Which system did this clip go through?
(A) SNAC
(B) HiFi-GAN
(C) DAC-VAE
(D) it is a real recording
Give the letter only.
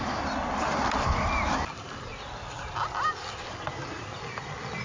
D